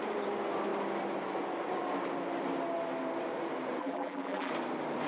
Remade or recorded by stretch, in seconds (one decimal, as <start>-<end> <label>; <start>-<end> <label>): 0.0-3.8 recorded; 3.8-4.5 remade; 4.5-5.1 recorded